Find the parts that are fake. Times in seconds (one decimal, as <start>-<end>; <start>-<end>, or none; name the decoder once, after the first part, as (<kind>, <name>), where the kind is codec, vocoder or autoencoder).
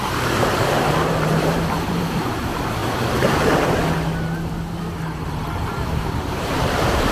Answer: 0.0-2.8 (vocoder, BigVGAN v2); 5.8-7.1